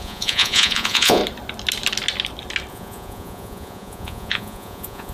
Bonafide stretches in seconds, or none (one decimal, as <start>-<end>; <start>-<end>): 1.2-2.7

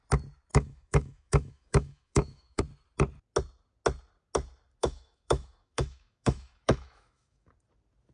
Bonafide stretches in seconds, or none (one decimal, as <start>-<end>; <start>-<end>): 0.0-0.5; 2.6-4.8; 7.5-8.1

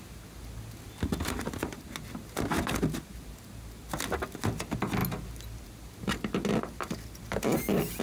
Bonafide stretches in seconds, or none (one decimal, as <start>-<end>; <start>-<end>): 0.0-8.0

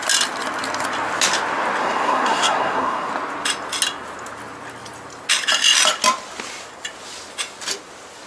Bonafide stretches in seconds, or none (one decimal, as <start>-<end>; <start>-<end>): 0.0-1.8; 3.1-8.3

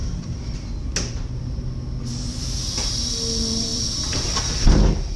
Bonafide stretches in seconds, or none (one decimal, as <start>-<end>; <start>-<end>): 0.0-3.7; 4.4-5.2